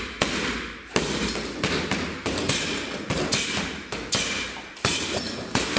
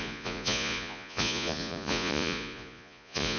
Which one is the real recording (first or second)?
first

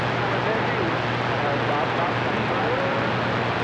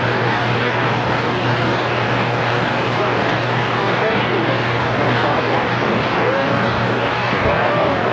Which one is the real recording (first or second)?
first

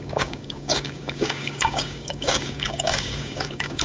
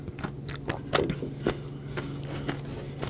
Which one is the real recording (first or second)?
second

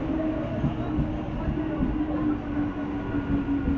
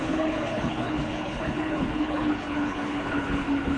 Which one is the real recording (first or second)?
first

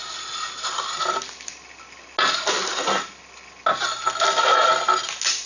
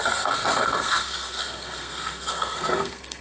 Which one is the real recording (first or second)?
first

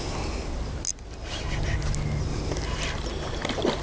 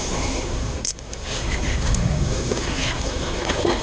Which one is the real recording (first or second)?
first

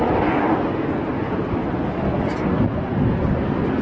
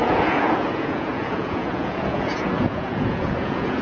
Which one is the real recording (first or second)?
first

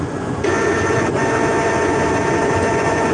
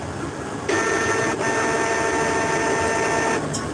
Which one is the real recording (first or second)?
second